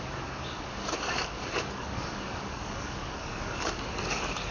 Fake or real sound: fake